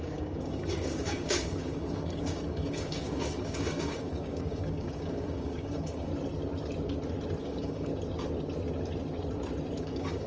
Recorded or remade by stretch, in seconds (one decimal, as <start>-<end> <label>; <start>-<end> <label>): 0.0-6.1 remade; 6.1-7.4 recorded; 7.4-7.9 remade; 7.9-9.8 recorded; 9.8-10.3 remade

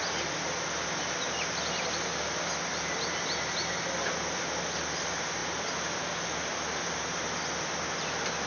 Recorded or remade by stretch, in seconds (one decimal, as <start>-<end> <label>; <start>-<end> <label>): 0.0-8.5 recorded

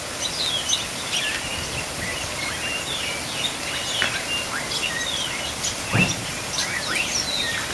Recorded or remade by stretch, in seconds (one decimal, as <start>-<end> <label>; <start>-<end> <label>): 0.0-6.6 recorded; 6.6-7.2 remade; 7.2-7.7 recorded

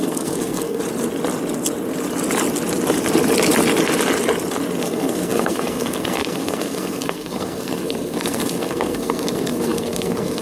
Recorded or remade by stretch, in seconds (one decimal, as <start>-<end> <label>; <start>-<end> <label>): 0.0-0.8 remade; 0.8-4.8 recorded; 4.8-10.4 remade